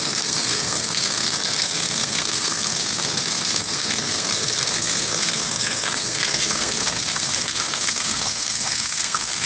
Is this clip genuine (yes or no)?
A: no